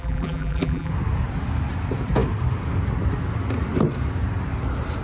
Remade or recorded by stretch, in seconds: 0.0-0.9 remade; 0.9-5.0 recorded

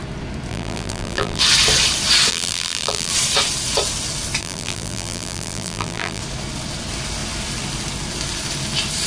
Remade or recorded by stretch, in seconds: 0.0-0.5 recorded; 0.5-1.4 remade; 1.4-2.3 recorded; 2.3-3.1 remade; 3.1-4.4 recorded; 4.4-6.2 remade; 6.2-9.1 recorded

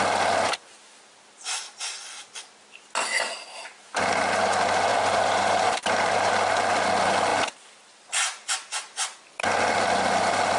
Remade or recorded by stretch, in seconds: 0.0-4.9 recorded; 4.9-6.3 remade; 6.3-10.6 recorded

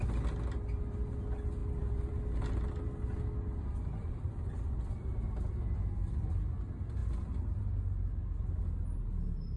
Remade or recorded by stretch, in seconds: 0.0-1.6 recorded; 1.6-2.2 remade; 2.2-9.6 recorded

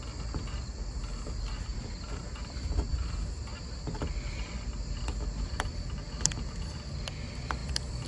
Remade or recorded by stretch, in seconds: 0.0-1.7 recorded; 1.7-2.2 remade; 2.2-7.6 recorded; 7.6-8.1 remade